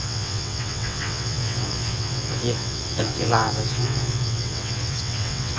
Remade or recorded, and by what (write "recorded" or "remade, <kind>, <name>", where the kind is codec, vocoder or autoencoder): remade, vocoder, WaveNeXt